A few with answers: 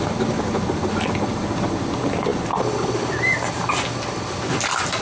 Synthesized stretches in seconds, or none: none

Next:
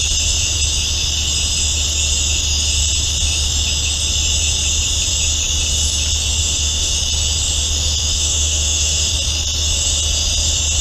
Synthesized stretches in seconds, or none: 6.4-6.9; 8.0-9.1

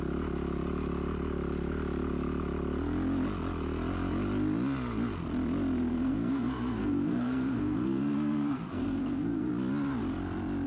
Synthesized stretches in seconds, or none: 5.9-9.5